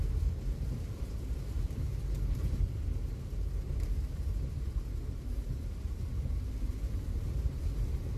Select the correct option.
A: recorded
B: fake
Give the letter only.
B